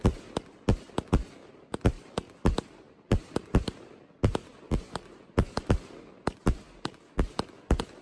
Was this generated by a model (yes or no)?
no